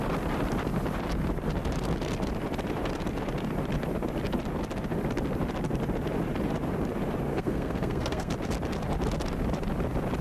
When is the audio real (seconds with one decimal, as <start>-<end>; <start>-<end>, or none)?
0.0-7.3; 8.3-10.2